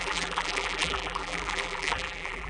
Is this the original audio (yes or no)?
no